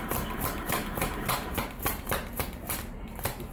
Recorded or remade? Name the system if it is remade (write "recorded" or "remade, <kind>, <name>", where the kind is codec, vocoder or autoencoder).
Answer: remade, vocoder, BigVGAN v2